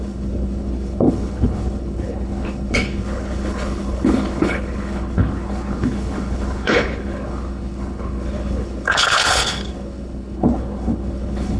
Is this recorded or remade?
remade